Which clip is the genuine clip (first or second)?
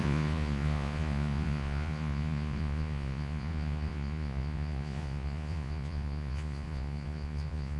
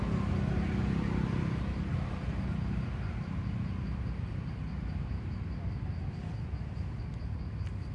second